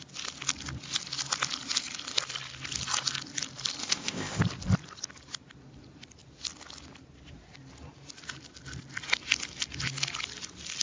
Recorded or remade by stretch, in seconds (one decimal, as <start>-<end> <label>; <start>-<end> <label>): 0.0-3.8 recorded; 3.8-4.4 remade; 4.4-10.8 recorded

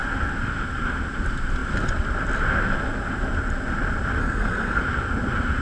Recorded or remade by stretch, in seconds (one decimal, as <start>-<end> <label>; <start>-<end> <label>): 0.0-4.2 recorded; 4.2-4.8 remade; 4.8-5.6 recorded

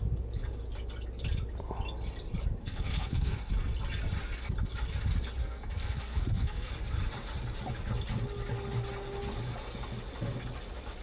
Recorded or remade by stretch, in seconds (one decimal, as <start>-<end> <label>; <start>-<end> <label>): 0.0-2.6 recorded; 2.6-3.5 remade; 3.5-5.4 recorded; 5.4-6.7 remade; 6.7-11.0 recorded

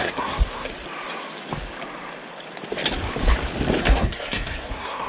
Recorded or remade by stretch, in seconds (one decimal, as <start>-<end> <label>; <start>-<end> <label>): 0.0-0.7 remade; 0.7-3.8 recorded; 3.8-5.1 remade